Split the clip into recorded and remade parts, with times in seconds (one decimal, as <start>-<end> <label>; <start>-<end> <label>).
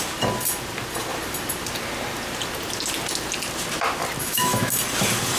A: 0.0-4.2 recorded; 4.2-4.7 remade; 4.7-5.4 recorded